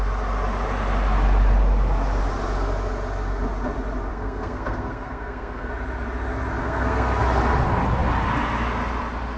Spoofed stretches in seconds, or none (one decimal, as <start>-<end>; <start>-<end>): 4.1-5.7; 6.6-7.2